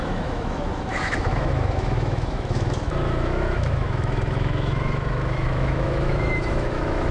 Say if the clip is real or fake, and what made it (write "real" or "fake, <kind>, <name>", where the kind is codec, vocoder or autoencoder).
fake, autoencoder, DAC-VAE